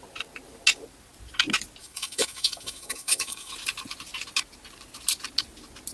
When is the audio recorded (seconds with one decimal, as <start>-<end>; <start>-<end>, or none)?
0.0-1.8; 3.5-5.9